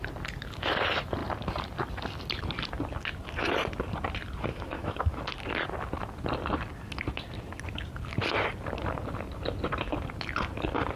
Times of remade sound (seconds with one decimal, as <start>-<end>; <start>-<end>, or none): 4.5-5.2